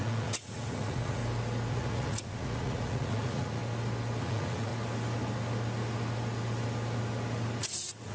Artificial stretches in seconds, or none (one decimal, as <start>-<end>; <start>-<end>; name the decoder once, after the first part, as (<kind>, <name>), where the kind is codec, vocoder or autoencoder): 0.0-1.2 (vocoder, Vocos); 1.7-3.6; 4.2-4.7; 7.6-8.1